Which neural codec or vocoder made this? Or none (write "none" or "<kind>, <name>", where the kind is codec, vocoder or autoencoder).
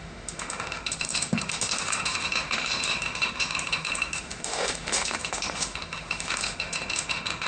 autoencoder, DAC-VAE